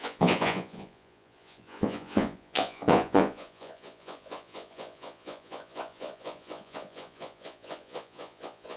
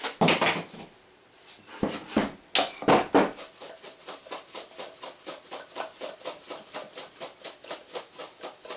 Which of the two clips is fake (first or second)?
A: first